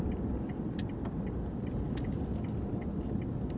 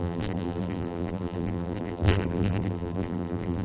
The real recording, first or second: first